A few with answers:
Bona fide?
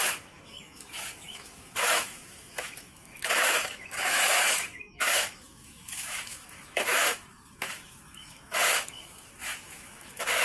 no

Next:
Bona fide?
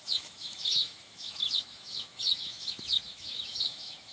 no